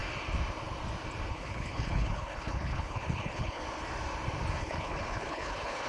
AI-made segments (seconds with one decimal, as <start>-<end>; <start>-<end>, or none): 1.3-3.6; 4.6-5.9

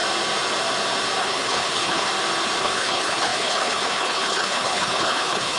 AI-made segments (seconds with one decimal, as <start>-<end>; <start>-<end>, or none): 1.2-2.1; 2.6-5.6

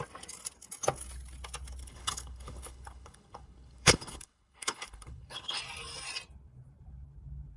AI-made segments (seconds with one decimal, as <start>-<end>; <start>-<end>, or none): 1.8-5.6

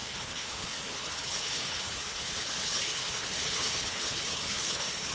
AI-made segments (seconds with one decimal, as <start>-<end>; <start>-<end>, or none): 0.0-5.1

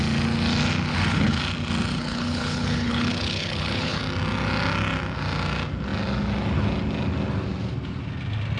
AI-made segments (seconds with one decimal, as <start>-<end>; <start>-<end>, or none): 0.9-1.4; 1.9-4.0

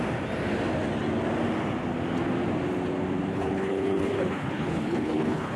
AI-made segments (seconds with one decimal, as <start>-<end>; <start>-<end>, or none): 3.3-5.6

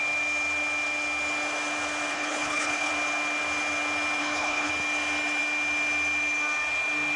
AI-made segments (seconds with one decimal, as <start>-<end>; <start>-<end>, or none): 2.1-2.9; 4.2-4.7